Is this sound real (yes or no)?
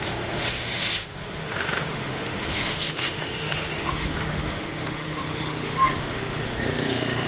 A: no